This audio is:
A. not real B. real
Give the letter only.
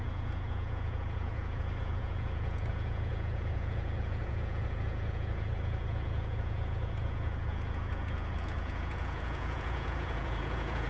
A